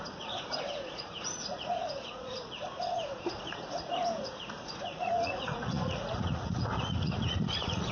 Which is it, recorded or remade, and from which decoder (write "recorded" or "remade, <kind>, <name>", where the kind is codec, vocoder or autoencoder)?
remade, vocoder, Vocos